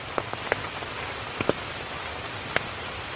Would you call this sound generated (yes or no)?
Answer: no